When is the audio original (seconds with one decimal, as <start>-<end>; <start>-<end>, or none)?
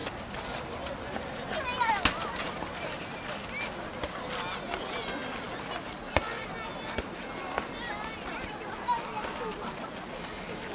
0.0-10.7